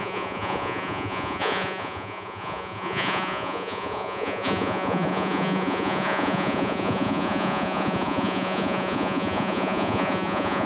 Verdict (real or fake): fake